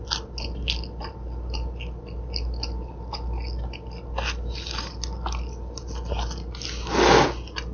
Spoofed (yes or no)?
no